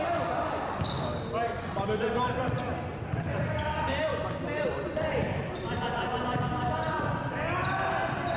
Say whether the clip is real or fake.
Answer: real